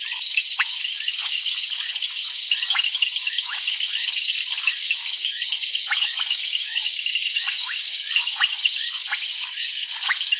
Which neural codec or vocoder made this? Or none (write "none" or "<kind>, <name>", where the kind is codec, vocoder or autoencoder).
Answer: codec, DAC